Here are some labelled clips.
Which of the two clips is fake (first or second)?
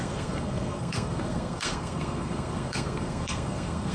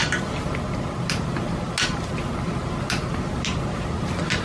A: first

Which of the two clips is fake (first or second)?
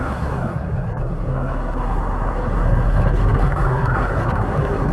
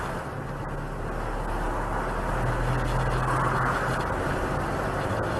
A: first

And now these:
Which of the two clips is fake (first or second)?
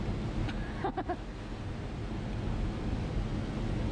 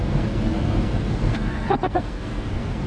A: second